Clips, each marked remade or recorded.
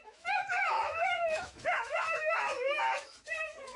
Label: remade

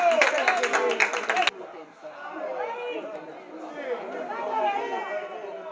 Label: recorded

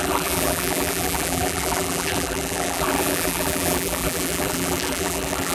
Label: remade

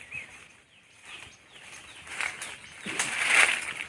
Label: recorded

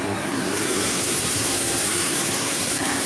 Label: remade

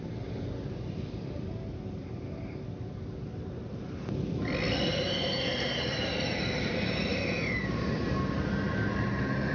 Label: recorded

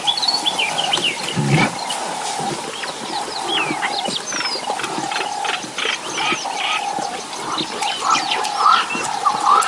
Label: recorded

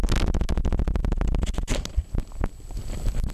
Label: recorded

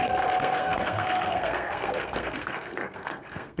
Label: remade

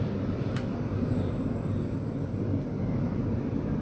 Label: remade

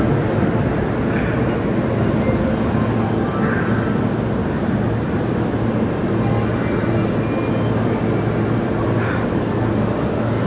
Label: recorded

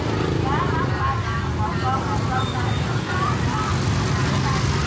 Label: recorded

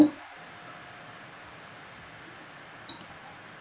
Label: recorded